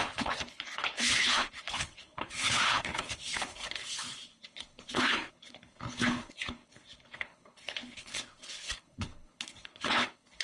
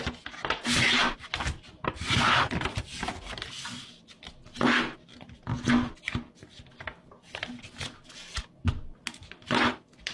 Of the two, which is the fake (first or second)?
first